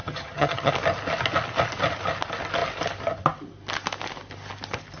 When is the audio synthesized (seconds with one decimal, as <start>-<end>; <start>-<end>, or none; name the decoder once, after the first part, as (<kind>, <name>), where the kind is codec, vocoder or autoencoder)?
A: 0.0-0.7 (vocoder, HiFi-GAN)